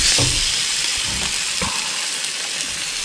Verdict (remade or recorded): recorded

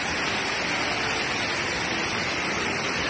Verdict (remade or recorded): recorded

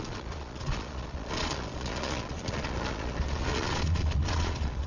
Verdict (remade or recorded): remade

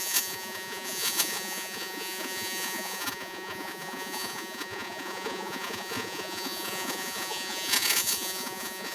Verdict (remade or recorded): remade